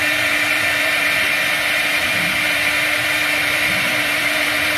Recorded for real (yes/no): no